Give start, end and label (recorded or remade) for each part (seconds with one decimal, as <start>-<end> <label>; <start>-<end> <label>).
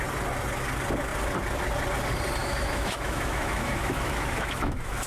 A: 0.0-2.4 recorded; 2.4-5.1 remade